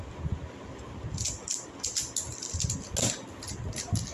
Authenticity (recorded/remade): recorded